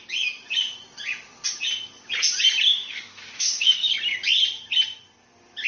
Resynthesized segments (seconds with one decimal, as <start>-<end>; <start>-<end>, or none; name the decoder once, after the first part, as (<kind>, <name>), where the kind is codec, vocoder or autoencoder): 2.7-3.9 (autoencoder, DAC-VAE)